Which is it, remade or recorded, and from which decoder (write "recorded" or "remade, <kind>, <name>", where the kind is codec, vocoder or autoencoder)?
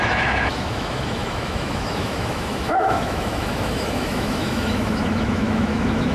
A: remade, autoencoder, DAC-VAE